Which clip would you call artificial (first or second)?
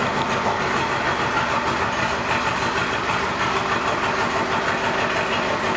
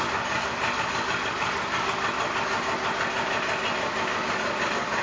second